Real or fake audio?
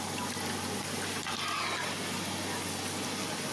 real